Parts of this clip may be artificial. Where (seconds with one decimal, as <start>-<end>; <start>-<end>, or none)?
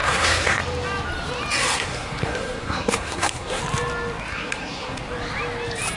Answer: 0.0-0.6; 1.7-3.6; 4.3-5.0